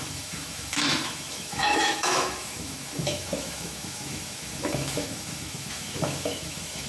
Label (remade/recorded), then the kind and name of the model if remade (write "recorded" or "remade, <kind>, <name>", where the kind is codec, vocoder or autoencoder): remade, autoencoder, DAC-VAE